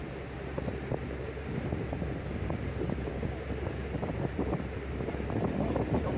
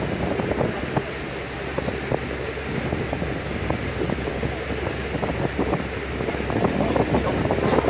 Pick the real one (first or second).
second